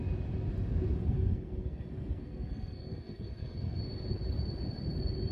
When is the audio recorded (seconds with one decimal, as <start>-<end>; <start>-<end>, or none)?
0.0-1.0; 3.8-5.3